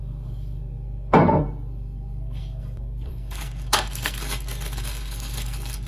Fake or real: fake